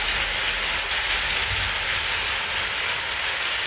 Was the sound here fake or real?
real